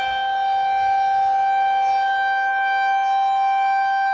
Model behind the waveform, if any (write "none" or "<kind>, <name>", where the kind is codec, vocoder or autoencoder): none